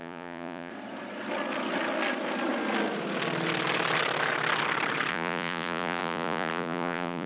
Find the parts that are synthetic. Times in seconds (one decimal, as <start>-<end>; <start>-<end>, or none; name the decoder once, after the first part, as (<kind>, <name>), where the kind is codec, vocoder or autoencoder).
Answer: 0.0-0.7 (vocoder, Vocos); 5.1-7.3